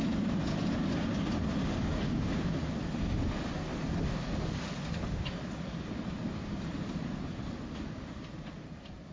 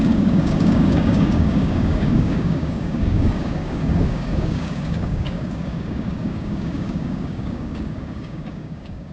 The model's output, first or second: second